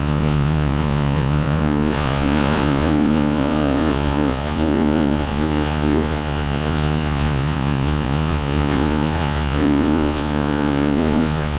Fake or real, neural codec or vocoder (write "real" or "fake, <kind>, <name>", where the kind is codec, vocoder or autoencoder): fake, vocoder, Vocos